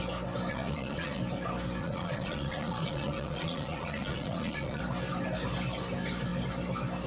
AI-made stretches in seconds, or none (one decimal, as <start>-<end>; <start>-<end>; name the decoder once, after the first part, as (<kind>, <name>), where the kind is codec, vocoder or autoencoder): 0.5-1.2 (vocoder, Vocos); 1.8-4.8